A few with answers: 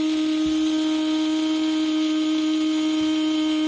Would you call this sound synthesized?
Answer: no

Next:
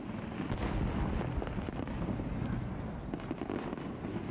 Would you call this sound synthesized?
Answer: no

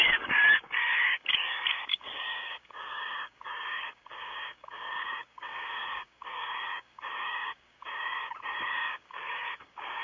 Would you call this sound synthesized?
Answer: yes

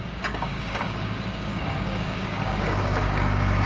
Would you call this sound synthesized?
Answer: yes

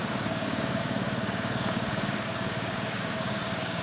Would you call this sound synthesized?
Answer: yes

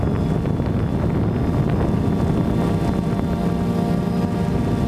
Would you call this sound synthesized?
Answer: no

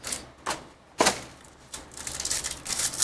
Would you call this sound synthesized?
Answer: no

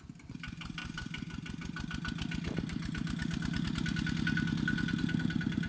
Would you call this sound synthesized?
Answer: no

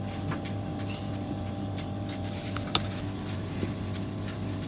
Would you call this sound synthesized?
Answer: no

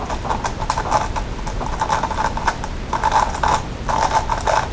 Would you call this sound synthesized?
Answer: no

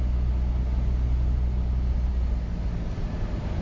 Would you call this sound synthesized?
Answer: no